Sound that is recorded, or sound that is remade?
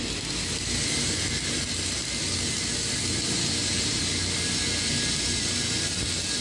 recorded